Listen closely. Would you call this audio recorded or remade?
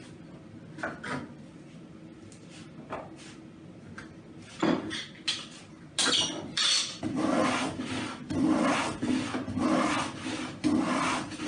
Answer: recorded